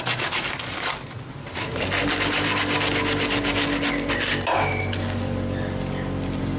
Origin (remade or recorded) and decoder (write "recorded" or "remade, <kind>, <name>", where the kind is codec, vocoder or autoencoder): recorded